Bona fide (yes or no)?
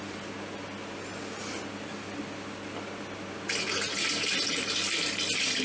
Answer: yes